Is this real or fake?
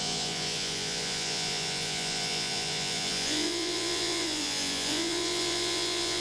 fake